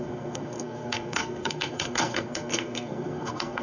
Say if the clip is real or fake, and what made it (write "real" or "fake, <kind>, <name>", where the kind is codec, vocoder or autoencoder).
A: fake, codec, SNAC